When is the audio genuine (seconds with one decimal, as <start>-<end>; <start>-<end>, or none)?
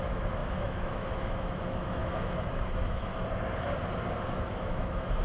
3.1-4.3